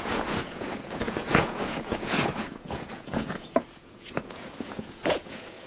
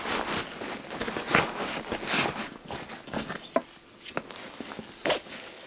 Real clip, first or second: second